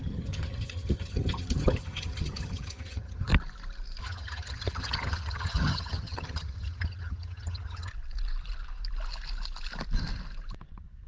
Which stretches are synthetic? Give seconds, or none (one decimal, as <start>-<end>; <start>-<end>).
0.0-3.3; 4.0-7.9